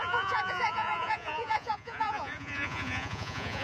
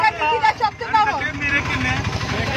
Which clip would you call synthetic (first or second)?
first